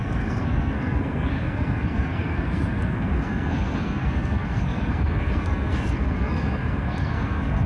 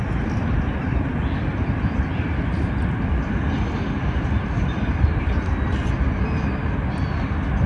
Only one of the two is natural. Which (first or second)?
second